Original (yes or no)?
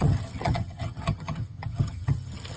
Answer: no